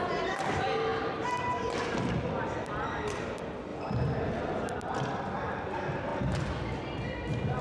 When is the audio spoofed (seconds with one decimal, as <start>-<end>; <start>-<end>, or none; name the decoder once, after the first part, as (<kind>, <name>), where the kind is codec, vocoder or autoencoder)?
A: none